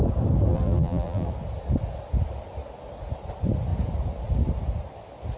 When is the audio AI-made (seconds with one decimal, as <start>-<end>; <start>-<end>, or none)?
0.5-1.3